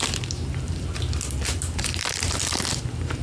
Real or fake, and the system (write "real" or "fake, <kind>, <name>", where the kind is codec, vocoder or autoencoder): real